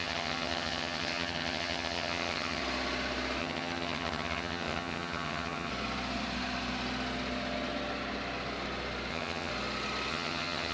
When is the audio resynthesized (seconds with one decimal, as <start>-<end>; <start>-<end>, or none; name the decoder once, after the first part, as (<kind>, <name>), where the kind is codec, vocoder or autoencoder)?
0.0-2.6 (vocoder, HiFi-GAN); 3.4-5.7; 9.1-9.5; 10.1-10.7